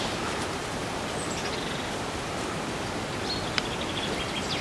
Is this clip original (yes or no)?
yes